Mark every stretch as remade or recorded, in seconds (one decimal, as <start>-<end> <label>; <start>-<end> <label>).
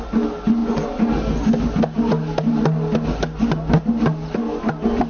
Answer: 0.0-5.1 recorded